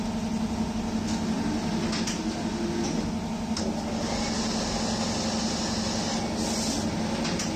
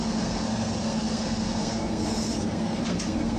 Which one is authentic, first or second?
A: first